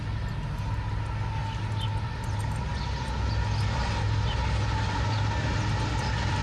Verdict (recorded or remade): recorded